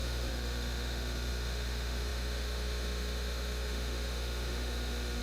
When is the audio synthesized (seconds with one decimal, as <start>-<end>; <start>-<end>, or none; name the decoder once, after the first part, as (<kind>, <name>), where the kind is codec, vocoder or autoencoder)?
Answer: 0.0-5.2 (autoencoder, DAC-VAE)